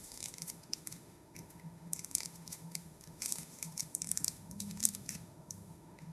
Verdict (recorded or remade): remade